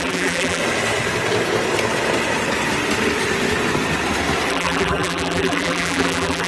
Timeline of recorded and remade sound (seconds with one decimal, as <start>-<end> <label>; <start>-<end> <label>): 0.0-0.6 remade; 0.6-4.5 recorded; 4.5-6.5 remade